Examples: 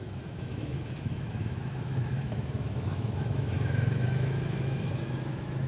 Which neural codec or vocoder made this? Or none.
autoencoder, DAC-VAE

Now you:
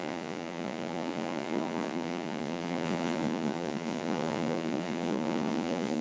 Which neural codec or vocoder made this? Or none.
vocoder, Vocos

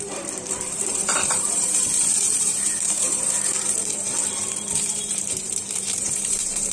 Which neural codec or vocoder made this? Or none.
vocoder, BigVGAN v2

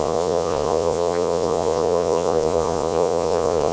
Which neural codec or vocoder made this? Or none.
vocoder, Vocos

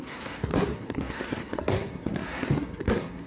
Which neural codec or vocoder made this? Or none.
codec, SNAC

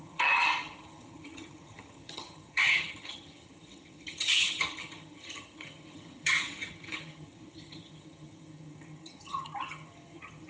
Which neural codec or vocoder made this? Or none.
vocoder, HiFi-GAN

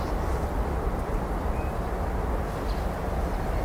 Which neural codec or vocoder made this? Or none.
vocoder, BigVGAN v2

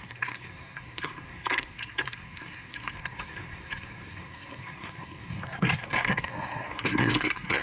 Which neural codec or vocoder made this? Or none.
codec, SNAC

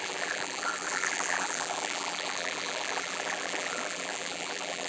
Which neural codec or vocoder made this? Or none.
vocoder, BigVGAN v2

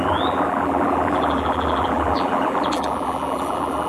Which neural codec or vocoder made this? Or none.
vocoder, BigVGAN v2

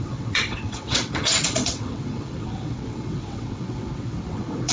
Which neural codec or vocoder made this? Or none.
vocoder, WaveNeXt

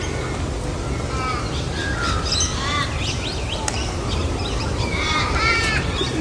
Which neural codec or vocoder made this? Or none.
none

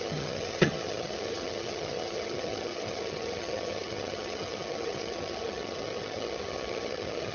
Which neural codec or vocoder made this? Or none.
vocoder, HiFi-GAN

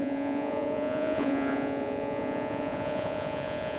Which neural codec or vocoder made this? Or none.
vocoder, Vocos